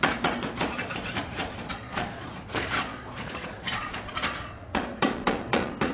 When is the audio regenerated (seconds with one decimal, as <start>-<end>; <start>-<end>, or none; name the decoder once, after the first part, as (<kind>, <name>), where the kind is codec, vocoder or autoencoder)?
0.0-5.9 (vocoder, Vocos)